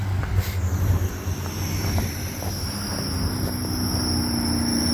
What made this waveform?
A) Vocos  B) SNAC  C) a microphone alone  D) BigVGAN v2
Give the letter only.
C